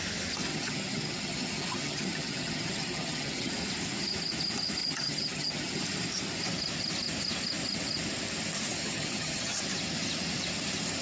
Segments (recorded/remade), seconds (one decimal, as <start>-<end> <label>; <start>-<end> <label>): 0.0-0.5 recorded; 0.5-3.5 remade; 3.5-4.8 recorded; 4.8-5.8 remade; 5.8-8.8 recorded; 8.8-9.6 remade; 9.6-11.0 recorded